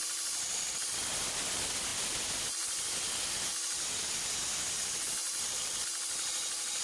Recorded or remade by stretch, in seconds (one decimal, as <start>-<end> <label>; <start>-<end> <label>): 0.0-6.8 recorded